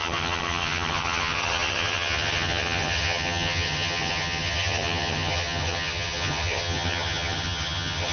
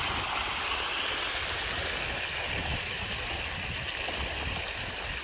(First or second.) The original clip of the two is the second